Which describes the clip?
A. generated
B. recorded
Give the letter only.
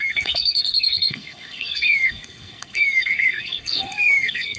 A